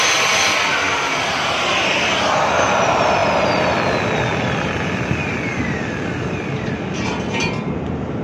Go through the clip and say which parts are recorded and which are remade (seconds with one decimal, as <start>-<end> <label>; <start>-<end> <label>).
0.0-8.2 recorded